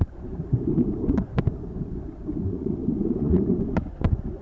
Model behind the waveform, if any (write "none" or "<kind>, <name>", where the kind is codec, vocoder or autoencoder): vocoder, Vocos